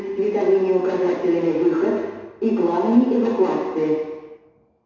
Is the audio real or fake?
real